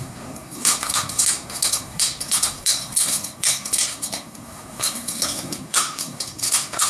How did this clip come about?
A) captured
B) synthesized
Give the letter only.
B